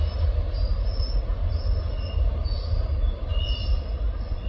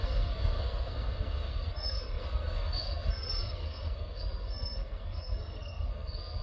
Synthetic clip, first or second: second